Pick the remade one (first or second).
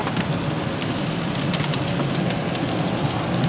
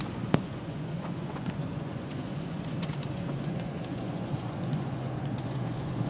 second